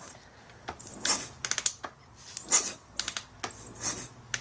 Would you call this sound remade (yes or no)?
no